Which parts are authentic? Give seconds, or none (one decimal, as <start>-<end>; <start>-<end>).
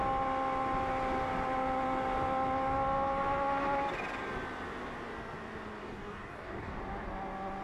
0.0-5.8; 6.8-7.6